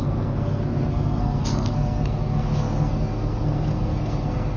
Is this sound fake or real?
fake